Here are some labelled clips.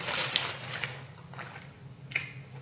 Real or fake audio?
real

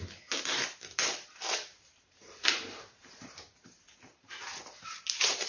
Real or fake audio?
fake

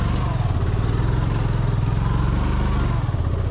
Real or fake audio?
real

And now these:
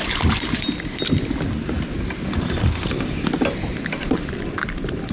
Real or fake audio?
real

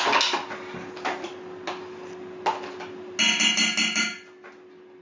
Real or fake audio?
real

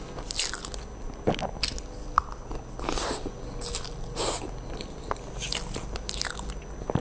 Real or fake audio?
real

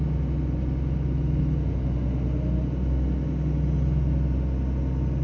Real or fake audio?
real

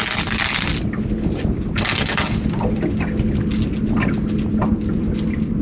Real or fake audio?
real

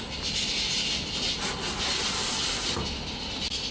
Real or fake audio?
real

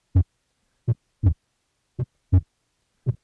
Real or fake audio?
fake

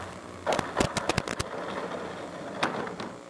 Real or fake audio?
real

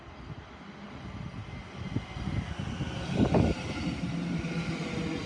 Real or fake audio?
real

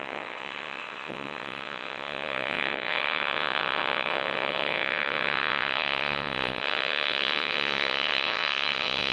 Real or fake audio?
fake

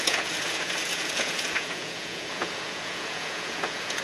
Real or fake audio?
fake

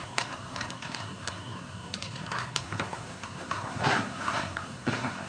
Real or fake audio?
fake